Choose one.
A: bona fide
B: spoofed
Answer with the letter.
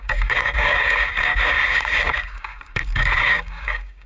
B